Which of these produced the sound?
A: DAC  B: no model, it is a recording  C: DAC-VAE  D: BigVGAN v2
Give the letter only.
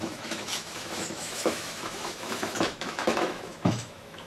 C